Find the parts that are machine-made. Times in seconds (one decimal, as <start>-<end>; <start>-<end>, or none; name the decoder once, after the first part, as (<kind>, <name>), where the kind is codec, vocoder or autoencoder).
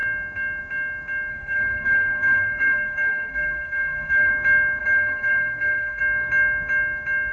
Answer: 1.3-4.3 (codec, SNAC); 4.8-6.0